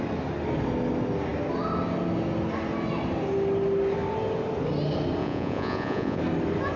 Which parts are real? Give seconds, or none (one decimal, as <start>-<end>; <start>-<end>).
0.0-5.2; 6.2-6.8